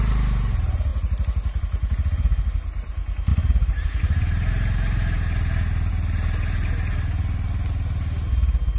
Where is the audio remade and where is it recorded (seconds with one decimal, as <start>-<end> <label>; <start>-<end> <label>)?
0.0-8.8 recorded